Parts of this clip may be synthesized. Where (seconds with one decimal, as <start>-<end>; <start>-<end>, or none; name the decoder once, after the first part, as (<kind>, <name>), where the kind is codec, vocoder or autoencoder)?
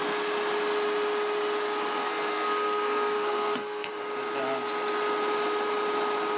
2.0-3.9 (codec, SNAC)